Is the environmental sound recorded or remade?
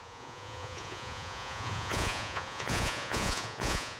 remade